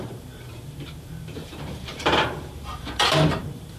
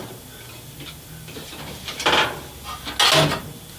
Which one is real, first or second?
second